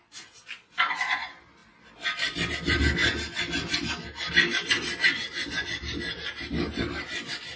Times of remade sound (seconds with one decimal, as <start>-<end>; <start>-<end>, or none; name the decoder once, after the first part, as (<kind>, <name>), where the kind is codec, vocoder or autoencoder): none